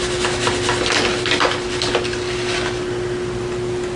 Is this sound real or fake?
real